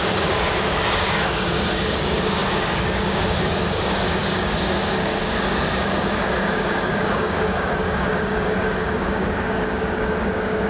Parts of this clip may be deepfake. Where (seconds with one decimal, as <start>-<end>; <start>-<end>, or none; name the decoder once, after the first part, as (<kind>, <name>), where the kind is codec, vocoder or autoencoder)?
0.0-10.7 (codec, DAC)